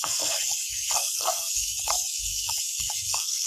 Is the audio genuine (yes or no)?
no